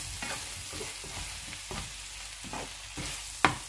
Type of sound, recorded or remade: recorded